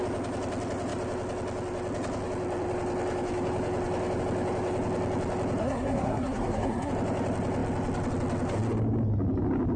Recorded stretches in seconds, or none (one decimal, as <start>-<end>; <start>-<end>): 0.0-5.6; 6.9-9.8